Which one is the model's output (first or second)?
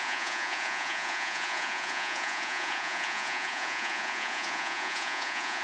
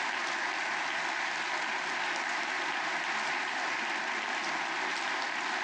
first